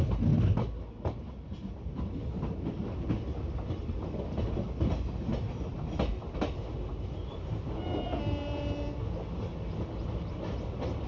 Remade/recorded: recorded